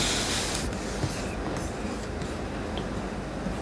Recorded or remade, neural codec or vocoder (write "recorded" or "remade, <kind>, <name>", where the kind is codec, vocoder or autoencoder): recorded